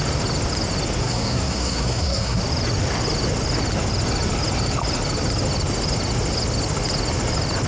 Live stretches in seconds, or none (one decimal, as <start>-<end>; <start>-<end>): 0.0-1.0; 2.4-7.7